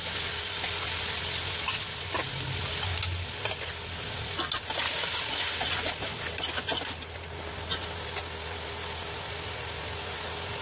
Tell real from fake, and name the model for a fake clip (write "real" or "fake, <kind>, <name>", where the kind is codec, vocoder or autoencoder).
real